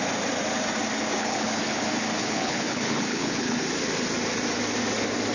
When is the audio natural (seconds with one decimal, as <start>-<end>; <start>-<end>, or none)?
0.0-1.2; 1.8-2.2; 3.6-5.3